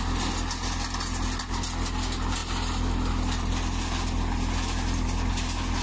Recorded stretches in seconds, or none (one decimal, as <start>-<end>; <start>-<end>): 0.0-5.8